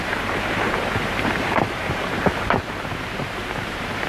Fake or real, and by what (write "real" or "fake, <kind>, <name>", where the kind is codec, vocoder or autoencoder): fake, vocoder, BigVGAN v2